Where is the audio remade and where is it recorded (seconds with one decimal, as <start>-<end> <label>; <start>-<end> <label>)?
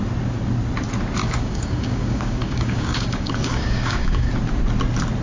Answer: 0.0-1.2 recorded; 1.2-4.3 remade; 4.3-5.2 recorded